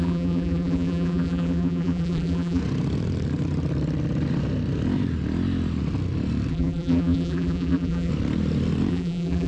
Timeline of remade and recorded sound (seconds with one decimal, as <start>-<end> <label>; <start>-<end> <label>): 0.0-2.6 remade; 2.6-6.5 recorded; 6.5-8.1 remade; 8.1-8.9 recorded; 8.9-9.5 remade